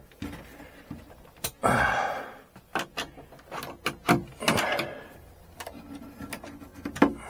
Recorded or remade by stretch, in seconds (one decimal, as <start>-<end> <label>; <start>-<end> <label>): 0.0-7.3 recorded

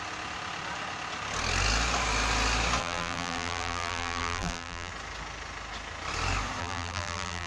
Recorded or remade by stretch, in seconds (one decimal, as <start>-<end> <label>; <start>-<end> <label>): 0.0-2.8 recorded; 2.8-4.9 remade; 4.9-6.6 recorded; 6.6-7.5 remade

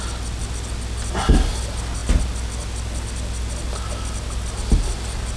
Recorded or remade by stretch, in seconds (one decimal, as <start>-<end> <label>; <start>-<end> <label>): 0.0-5.4 recorded

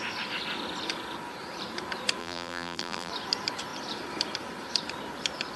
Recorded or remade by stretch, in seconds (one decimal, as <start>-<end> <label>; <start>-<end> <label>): 0.0-2.2 recorded; 2.2-3.1 remade; 3.1-5.6 recorded

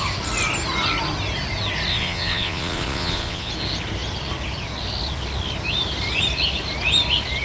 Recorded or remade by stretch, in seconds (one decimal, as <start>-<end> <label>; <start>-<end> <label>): 0.0-1.9 recorded; 1.9-3.5 remade; 3.5-7.4 recorded

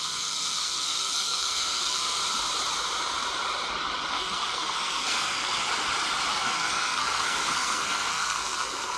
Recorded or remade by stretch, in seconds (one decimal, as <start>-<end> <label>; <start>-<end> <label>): 0.0-2.2 remade; 2.2-4.1 recorded; 4.1-5.6 remade; 5.6-6.3 recorded; 6.3-9.0 remade

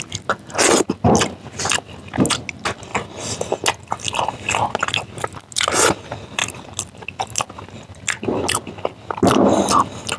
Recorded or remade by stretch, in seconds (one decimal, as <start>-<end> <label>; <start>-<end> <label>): 0.0-10.2 recorded